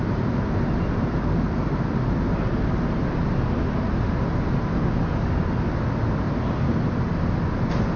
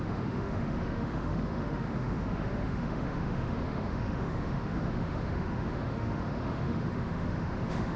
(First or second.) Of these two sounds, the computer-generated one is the second